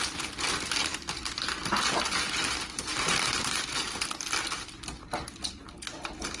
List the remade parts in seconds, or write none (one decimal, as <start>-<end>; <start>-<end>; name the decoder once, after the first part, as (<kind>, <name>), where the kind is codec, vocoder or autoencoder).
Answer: none